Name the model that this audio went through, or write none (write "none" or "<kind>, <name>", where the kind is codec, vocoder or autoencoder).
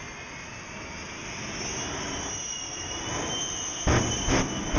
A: none